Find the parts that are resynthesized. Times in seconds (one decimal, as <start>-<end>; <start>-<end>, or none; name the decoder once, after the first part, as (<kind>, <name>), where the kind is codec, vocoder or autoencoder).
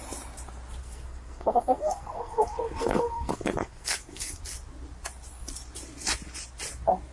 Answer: 0.8-4.4 (codec, SNAC)